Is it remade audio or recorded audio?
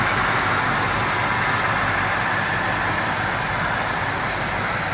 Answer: recorded